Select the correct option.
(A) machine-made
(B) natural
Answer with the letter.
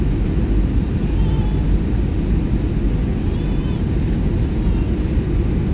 B